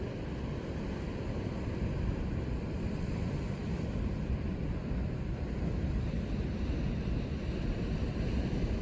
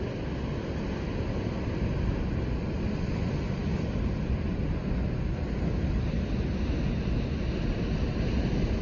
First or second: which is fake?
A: first